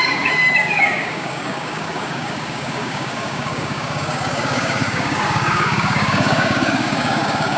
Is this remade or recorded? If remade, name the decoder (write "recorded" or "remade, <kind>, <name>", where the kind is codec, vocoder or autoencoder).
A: remade, codec, DAC